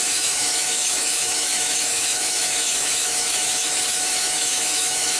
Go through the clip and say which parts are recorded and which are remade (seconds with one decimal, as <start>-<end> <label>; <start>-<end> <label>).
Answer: 0.0-5.2 remade